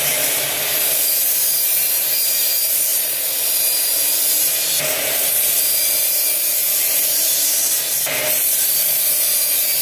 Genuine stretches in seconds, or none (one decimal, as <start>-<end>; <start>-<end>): none

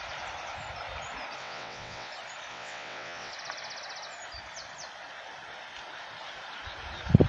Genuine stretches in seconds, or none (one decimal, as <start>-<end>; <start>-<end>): 0.0-1.4; 2.1-2.5; 3.3-7.3

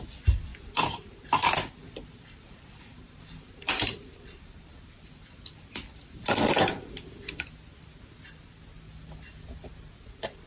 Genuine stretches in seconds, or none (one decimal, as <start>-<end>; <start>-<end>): 0.0-0.5; 5.0-10.5

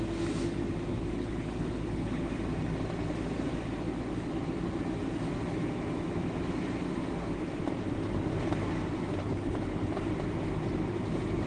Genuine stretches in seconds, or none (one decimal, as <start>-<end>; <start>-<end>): 0.0-0.9; 2.3-9.2; 10.0-11.5

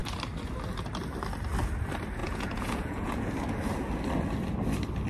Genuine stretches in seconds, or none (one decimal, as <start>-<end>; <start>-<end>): 0.0-2.2; 3.3-5.1

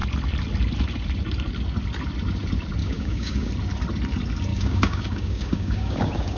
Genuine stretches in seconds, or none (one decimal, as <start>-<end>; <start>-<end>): 0.0-2.8; 3.5-4.5

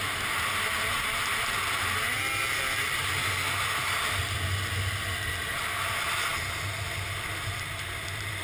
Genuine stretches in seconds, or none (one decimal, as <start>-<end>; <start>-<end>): 0.0-8.4

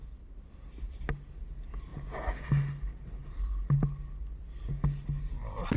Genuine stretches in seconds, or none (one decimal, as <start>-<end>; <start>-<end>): 0.0-5.8